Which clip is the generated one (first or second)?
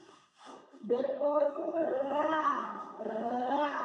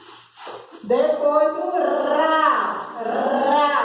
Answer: first